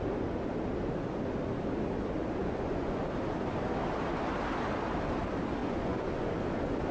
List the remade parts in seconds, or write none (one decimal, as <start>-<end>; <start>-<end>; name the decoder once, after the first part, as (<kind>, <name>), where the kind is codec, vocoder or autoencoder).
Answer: 2.4-3.0 (vocoder, Vocos); 5.6-6.3